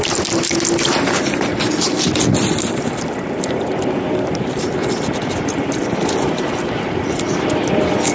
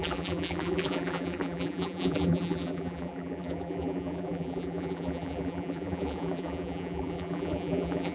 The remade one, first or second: second